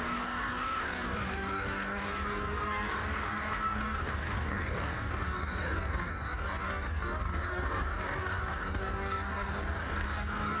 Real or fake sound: fake